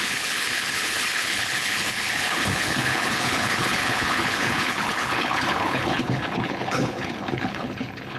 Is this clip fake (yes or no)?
yes